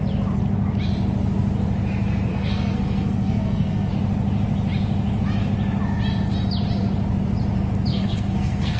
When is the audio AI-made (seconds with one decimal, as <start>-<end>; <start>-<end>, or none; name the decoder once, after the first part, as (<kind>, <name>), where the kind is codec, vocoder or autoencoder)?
2.3-3.9 (codec, SNAC); 7.9-8.8